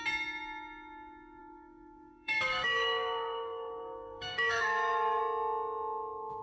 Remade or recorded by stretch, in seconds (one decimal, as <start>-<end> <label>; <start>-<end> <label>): 0.0-1.4 recorded; 1.4-5.2 remade; 5.2-6.4 recorded